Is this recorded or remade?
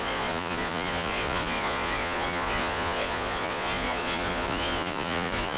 remade